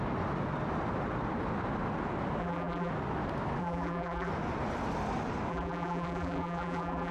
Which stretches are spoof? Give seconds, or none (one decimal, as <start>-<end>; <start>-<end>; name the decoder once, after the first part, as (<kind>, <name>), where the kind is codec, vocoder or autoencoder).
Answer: 2.4-2.9 (vocoder, BigVGAN v2); 3.6-4.3; 5.5-7.1